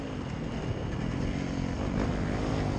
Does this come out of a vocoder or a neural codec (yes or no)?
no